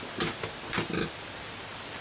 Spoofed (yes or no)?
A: no